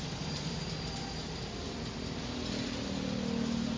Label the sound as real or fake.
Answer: real